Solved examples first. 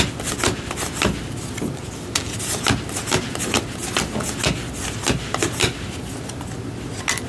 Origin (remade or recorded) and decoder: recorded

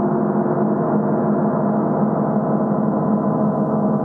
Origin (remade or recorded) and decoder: recorded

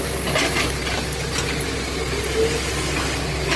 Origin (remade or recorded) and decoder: recorded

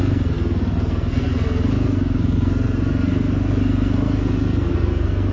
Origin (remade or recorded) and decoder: remade, codec, SNAC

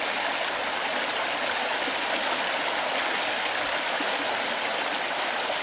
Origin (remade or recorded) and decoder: recorded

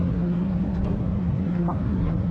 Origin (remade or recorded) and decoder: remade, codec, SNAC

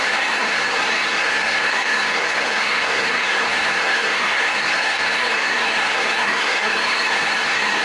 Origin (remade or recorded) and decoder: remade, codec, SNAC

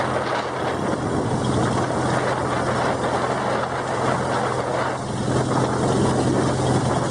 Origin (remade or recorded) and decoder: recorded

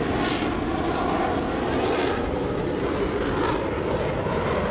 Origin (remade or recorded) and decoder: recorded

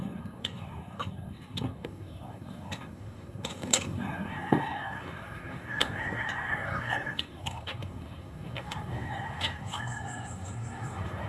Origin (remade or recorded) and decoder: remade, codec, SNAC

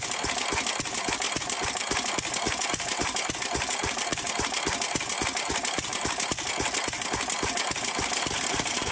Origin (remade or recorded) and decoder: recorded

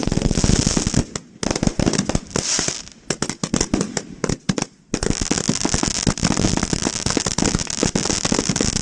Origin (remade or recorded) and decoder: recorded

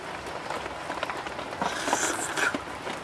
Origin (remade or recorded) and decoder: recorded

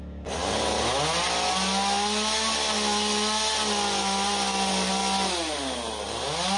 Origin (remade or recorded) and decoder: recorded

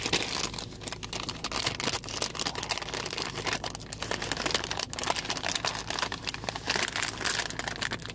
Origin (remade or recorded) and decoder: recorded